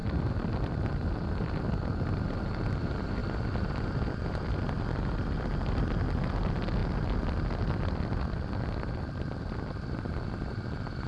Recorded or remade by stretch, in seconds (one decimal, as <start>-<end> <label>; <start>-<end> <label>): 0.0-11.1 recorded